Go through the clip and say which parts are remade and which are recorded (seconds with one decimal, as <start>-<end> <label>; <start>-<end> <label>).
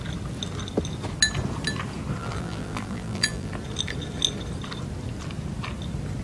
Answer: 0.0-2.2 recorded; 2.2-3.5 remade; 3.5-6.2 recorded